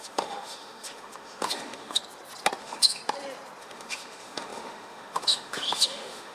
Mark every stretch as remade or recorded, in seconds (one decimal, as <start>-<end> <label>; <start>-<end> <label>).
0.0-2.0 remade; 2.0-2.6 recorded; 2.6-3.0 remade; 3.0-3.6 recorded; 3.6-6.3 remade